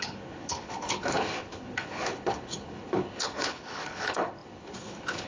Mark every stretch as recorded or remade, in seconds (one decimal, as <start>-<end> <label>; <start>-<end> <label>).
0.0-5.3 remade